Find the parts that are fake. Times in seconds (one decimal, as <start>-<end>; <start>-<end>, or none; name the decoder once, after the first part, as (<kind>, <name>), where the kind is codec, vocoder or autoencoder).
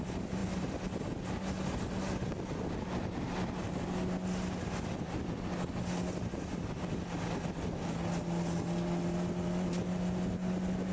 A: none